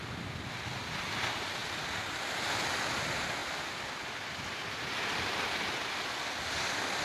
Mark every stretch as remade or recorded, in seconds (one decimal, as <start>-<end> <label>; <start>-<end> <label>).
0.0-3.4 recorded; 3.4-4.8 remade; 4.8-7.0 recorded